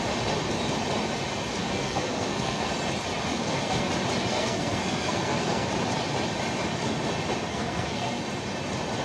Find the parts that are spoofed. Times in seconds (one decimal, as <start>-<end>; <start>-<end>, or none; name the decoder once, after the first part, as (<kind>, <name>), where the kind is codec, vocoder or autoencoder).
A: 1.6-2.7 (codec, SNAC); 3.3-3.9; 4.3-5.7; 7.5-8.2